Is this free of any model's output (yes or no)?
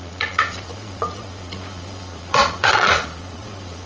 no